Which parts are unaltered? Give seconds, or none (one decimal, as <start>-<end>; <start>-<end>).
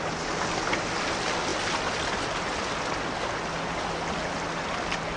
0.0-5.2